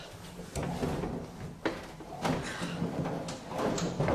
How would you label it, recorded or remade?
recorded